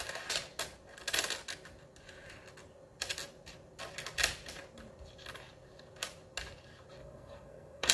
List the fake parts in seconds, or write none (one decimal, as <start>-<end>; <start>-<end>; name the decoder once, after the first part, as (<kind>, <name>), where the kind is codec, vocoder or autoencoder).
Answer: 7.0-7.9 (codec, SNAC)